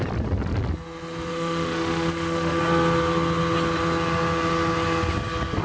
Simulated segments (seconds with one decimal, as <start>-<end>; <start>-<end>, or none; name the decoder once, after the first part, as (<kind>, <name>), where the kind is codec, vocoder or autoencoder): 1.3-2.6 (autoencoder, DAC-VAE)